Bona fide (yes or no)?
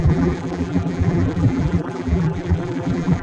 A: no